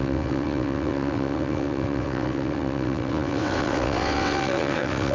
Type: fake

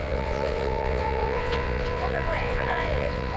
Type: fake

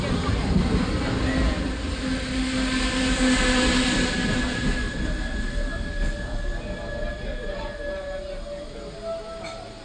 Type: real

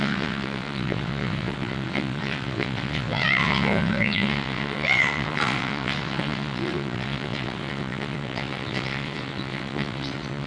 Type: fake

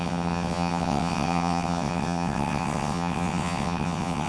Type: fake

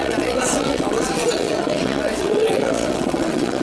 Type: fake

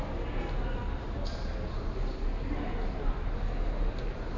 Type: real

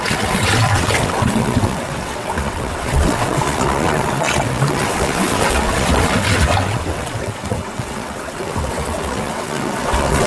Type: fake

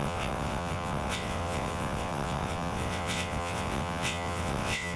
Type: fake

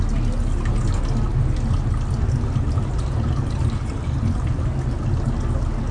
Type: real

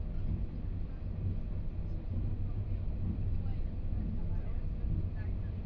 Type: real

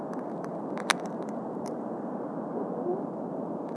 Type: real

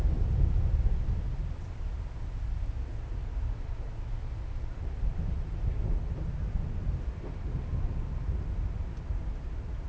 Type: real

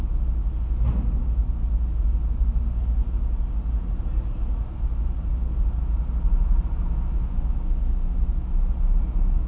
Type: real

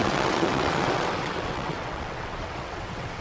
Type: fake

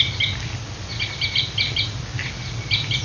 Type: real